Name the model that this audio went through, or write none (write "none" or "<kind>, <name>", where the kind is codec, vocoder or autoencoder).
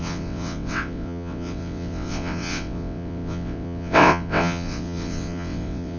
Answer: vocoder, WaveNeXt